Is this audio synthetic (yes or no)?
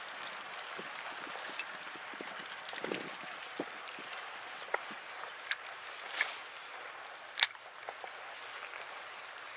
no